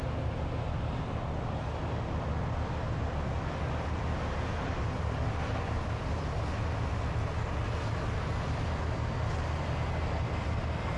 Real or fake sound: real